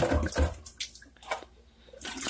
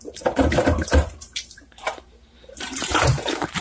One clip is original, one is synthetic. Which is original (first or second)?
first